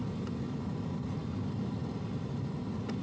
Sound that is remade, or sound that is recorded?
recorded